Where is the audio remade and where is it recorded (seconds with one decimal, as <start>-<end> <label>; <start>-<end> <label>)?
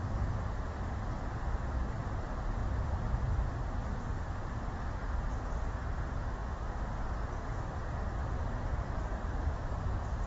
0.0-8.2 recorded; 8.2-10.3 remade